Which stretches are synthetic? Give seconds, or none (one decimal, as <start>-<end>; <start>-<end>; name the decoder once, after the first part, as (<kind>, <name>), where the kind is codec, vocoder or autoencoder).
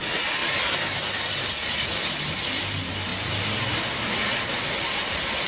none